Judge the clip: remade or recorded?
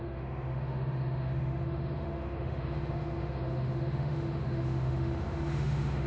remade